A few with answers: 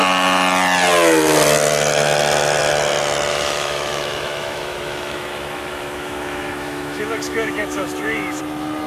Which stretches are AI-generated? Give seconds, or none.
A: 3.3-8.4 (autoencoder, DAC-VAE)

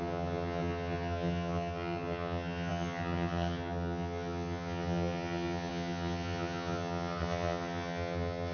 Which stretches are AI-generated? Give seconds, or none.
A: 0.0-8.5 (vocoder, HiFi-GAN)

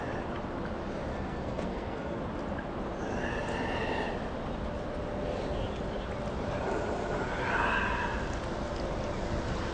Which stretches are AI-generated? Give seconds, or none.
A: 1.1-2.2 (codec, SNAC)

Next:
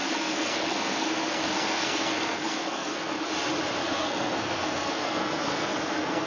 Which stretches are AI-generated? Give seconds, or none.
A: 0.0-3.3 (codec, SNAC); 3.8-6.3

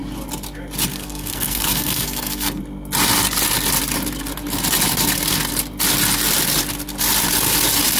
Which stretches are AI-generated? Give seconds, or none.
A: 0.9-2.6 (codec, SNAC)